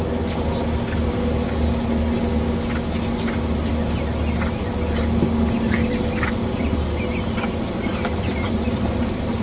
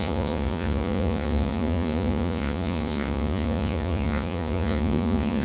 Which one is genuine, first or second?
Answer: first